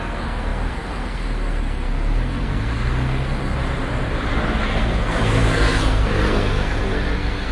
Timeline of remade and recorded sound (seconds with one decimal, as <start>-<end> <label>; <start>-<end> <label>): 0.0-3.6 remade; 3.6-4.6 recorded; 4.6-7.5 remade